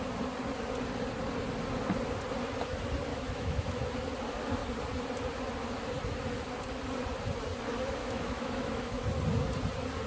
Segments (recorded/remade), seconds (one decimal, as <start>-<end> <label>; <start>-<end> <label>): 0.0-3.1 recorded; 3.1-3.8 remade; 3.8-8.0 recorded; 8.0-9.2 remade; 9.2-10.1 recorded